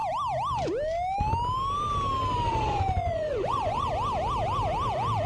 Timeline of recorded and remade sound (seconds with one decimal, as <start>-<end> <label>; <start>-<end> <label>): 0.0-2.5 recorded; 2.5-3.9 remade; 3.9-5.3 recorded